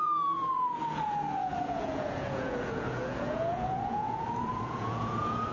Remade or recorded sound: remade